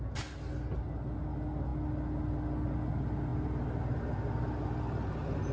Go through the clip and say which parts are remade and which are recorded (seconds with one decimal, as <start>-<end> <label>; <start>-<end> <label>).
0.0-5.5 recorded